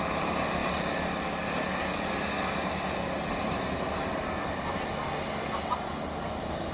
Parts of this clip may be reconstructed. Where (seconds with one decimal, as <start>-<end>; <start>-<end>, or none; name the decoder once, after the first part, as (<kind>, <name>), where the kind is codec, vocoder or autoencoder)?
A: none